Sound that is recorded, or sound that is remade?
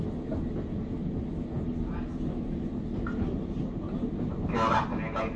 recorded